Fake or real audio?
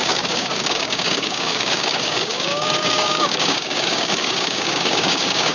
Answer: fake